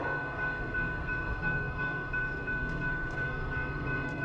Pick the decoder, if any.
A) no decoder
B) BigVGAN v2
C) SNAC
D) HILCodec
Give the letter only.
C